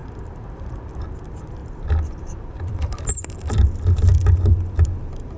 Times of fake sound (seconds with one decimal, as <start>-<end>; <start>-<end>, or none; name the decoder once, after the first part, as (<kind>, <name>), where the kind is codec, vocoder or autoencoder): 1.6-4.8 (vocoder, BigVGAN v2)